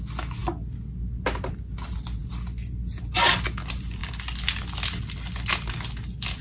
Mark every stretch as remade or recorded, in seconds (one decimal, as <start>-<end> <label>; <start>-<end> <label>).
0.0-6.4 recorded